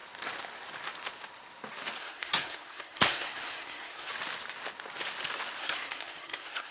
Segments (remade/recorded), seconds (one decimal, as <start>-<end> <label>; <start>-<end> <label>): 0.0-2.0 recorded; 2.0-4.1 remade; 4.1-5.6 recorded; 5.6-6.7 remade